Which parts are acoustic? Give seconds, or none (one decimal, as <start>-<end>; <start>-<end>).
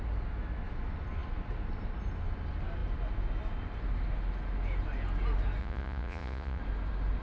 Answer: 0.0-5.6; 6.6-7.2